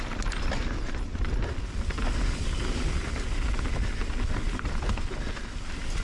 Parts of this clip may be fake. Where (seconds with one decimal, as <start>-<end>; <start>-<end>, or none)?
none